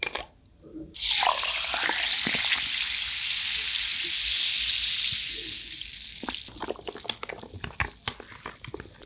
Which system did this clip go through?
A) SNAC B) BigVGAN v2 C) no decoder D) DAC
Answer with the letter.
C